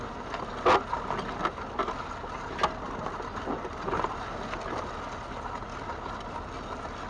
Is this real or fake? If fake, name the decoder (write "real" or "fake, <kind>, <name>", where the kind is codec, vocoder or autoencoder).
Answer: real